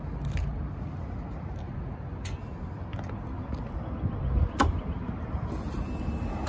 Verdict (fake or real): real